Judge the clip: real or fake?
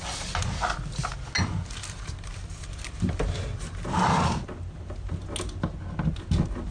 real